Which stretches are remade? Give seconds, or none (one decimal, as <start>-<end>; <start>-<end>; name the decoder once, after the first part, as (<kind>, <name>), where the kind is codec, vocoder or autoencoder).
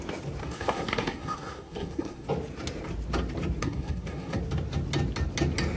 0.4-2.3 (codec, SNAC); 3.6-4.4